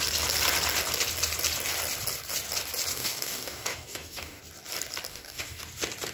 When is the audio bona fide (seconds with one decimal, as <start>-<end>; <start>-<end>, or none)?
0.0-2.9; 4.4-5.1; 5.6-6.1